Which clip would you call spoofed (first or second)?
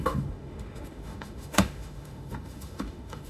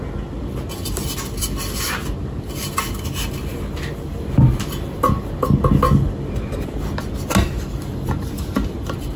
first